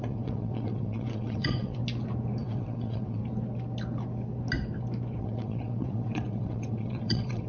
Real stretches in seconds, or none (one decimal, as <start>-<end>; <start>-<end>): 1.8-2.4; 3.2-5.2